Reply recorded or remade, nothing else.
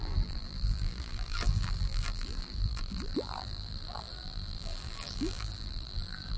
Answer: remade